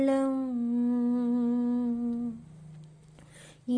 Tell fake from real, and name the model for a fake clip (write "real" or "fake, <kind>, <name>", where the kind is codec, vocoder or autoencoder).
real